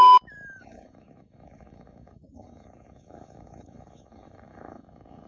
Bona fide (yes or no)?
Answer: no